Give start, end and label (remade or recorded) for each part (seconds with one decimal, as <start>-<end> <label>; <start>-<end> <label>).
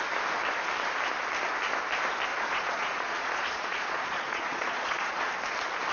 0.0-2.3 recorded; 2.3-5.3 remade; 5.3-5.9 recorded